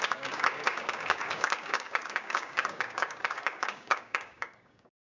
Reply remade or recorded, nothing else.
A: remade